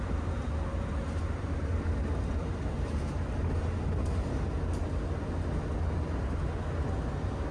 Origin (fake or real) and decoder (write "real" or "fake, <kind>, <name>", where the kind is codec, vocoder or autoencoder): real